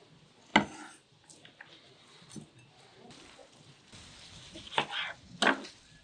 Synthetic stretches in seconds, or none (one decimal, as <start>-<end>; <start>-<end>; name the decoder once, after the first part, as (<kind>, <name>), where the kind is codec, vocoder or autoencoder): none